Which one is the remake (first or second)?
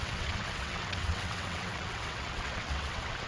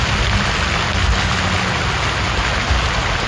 first